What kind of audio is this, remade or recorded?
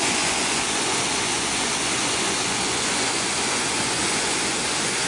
remade